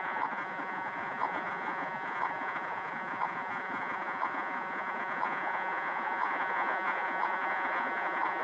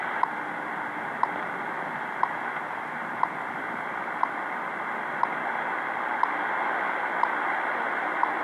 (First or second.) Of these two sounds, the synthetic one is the first